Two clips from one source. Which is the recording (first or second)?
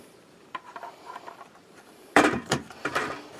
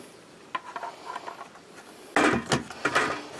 second